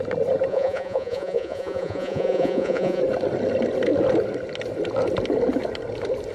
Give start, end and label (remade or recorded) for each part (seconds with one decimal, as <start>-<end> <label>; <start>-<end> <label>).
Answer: 0.0-0.5 recorded; 0.5-3.0 remade; 3.0-6.3 recorded